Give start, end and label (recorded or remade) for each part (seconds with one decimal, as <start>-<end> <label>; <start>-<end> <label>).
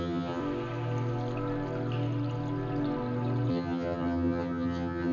0.0-0.4 remade; 0.4-3.5 recorded; 3.5-5.1 remade